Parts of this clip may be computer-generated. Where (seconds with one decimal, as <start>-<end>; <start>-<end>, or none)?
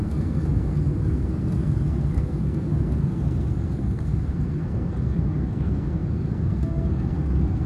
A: 0.0-7.7